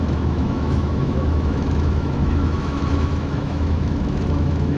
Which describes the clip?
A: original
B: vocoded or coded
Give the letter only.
B